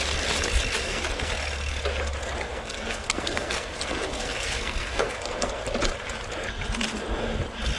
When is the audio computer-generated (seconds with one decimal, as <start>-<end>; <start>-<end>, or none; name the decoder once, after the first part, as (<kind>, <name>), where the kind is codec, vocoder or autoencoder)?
0.8-1.3 (codec, SNAC); 2.5-5.6